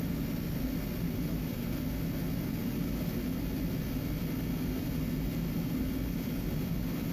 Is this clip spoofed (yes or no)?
no